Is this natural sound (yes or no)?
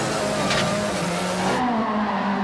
yes